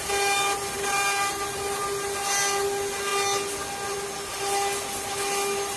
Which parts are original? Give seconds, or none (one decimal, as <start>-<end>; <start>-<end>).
0.0-5.8